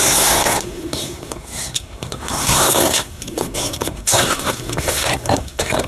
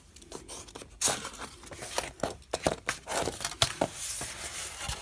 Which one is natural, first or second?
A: second